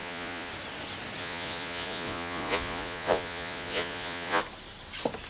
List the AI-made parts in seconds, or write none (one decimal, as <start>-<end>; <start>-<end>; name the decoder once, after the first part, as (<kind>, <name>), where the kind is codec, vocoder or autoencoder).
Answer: 0.0-0.5 (vocoder, Vocos); 1.2-4.4

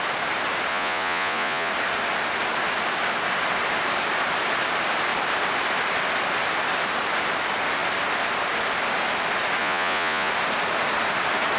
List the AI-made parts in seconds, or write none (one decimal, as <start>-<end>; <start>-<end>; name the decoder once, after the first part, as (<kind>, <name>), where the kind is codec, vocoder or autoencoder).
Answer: 0.7-1.7 (vocoder, Vocos); 9.6-10.3

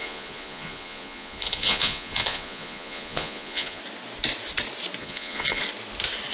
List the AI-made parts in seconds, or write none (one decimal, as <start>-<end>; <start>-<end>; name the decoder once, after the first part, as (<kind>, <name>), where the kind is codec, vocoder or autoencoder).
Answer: 0.0-3.8 (vocoder, Vocos); 5.0-5.6